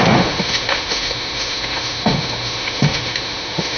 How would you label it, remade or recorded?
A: remade